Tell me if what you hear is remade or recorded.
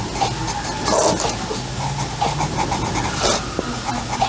recorded